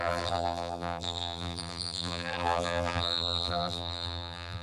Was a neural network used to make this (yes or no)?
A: yes